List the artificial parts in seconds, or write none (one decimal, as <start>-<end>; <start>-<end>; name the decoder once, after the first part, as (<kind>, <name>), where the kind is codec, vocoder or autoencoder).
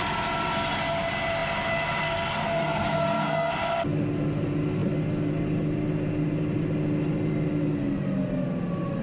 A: 2.4-3.5 (codec, SNAC)